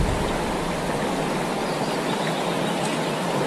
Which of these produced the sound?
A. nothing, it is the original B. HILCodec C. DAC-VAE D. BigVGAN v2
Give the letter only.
A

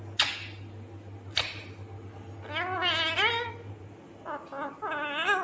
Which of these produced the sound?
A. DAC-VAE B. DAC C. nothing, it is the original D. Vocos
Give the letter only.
C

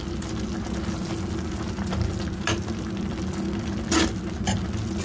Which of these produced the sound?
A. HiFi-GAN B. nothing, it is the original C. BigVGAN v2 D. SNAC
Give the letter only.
B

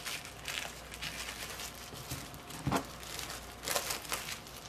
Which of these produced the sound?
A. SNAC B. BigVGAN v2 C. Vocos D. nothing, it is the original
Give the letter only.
D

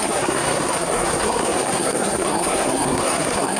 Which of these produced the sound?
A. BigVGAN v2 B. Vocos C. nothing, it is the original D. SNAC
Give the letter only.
D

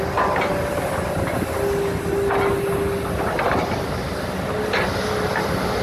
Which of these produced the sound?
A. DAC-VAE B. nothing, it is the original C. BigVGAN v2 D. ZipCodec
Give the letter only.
B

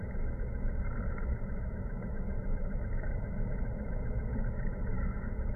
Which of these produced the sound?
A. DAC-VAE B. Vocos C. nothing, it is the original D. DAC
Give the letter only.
A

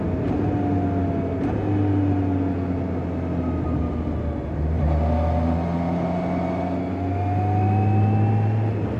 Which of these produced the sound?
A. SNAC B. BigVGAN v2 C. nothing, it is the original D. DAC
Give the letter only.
C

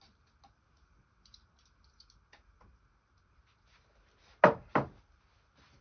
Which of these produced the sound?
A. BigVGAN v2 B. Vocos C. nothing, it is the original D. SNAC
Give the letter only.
C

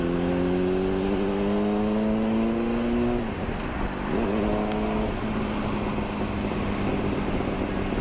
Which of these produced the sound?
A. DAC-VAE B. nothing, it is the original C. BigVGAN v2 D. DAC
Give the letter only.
B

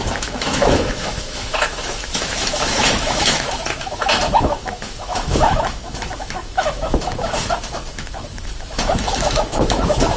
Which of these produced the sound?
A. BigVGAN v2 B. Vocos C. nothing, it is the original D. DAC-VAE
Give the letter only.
D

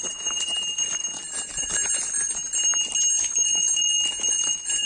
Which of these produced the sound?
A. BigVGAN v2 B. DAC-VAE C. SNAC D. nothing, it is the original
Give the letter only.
D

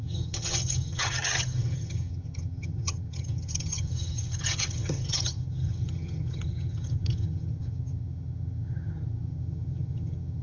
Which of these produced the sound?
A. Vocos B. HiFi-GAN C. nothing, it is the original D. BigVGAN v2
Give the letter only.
B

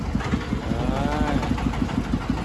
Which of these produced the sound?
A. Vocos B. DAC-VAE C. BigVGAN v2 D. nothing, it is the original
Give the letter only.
D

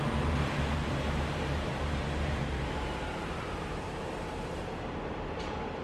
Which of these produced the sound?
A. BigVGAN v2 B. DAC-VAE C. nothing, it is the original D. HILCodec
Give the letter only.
A